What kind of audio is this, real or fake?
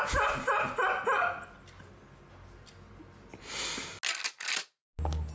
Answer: real